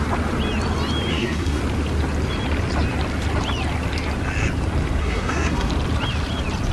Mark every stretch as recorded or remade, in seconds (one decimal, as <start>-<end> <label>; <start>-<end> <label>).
0.0-1.1 recorded; 1.1-1.6 remade; 1.6-5.0 recorded; 5.0-5.7 remade; 5.7-6.7 recorded

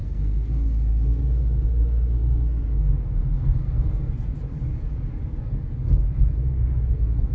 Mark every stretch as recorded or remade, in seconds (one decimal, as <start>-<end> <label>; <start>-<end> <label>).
0.0-4.3 remade; 4.3-5.4 recorded; 5.4-7.3 remade

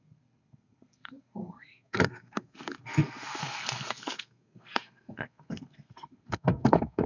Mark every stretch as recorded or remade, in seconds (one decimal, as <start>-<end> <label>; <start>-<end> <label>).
0.0-7.1 remade

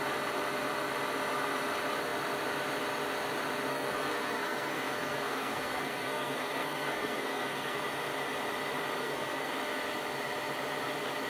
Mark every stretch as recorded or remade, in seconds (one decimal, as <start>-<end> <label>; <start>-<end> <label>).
0.0-3.7 recorded; 3.7-7.8 remade; 7.8-9.0 recorded; 9.0-9.5 remade; 9.5-11.3 recorded